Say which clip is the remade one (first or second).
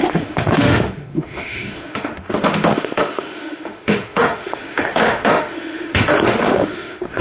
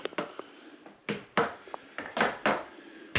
first